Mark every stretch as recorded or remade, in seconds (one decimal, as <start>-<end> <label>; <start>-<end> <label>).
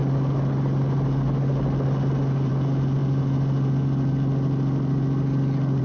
0.0-5.8 recorded